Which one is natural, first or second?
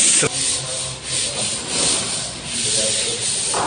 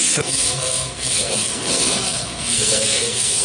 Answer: first